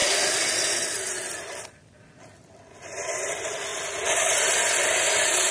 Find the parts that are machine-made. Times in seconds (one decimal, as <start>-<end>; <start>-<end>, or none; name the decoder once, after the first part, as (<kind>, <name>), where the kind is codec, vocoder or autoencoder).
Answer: 1.5-3.7 (vocoder, BigVGAN v2); 4.4-5.5